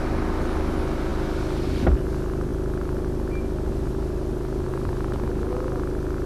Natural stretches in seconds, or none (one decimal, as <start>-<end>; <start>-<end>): 0.0-6.3